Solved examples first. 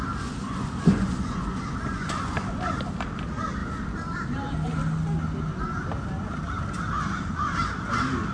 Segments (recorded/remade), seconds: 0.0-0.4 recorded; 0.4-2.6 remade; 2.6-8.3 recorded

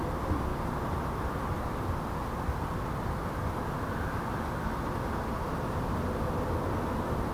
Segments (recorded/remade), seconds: 0.0-7.3 recorded

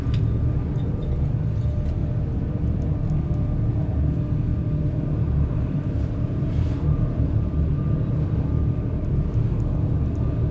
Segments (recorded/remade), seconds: 0.0-2.0 recorded; 2.0-2.8 remade; 2.8-4.5 recorded; 4.5-9.6 remade; 9.6-10.5 recorded

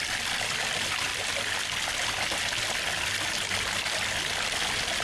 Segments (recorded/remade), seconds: 0.0-5.0 recorded

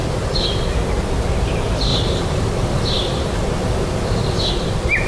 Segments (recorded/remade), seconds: 0.0-0.6 remade; 0.6-1.9 recorded; 1.9-4.5 remade; 4.5-5.1 recorded